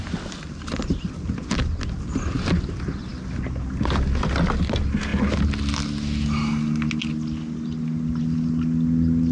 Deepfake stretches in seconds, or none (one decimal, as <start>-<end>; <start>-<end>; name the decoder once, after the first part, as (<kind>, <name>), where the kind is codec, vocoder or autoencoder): none